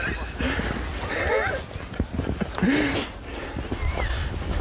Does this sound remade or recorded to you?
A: recorded